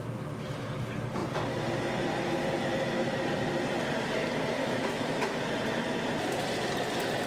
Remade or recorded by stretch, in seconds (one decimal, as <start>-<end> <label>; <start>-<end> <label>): 0.0-4.6 recorded; 4.6-5.4 remade; 5.4-7.3 recorded